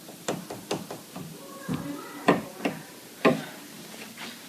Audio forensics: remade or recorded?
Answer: recorded